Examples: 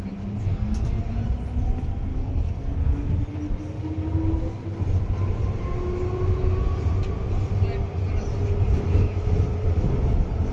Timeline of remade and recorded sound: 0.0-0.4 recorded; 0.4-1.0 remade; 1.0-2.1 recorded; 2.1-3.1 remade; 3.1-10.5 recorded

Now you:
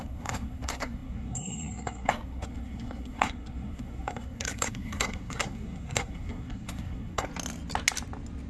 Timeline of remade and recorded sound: 0.0-7.3 remade; 7.3-8.5 recorded

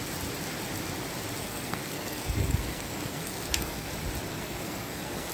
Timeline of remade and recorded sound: 0.0-1.4 recorded; 1.4-3.9 remade; 3.9-4.3 recorded; 4.3-5.3 remade

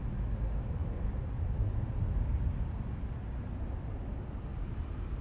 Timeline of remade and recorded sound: 0.0-5.2 recorded

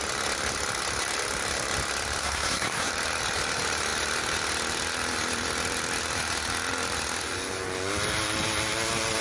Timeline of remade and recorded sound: 0.0-2.2 recorded; 2.2-2.9 remade; 2.9-9.2 recorded

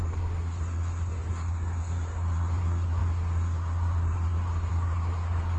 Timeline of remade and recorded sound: 0.0-5.6 remade